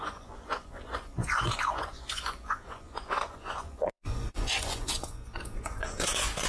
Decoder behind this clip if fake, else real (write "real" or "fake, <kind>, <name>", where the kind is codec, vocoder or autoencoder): fake, vocoder, Vocos